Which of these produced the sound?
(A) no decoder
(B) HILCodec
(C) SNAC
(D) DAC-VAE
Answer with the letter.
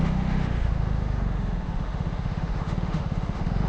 D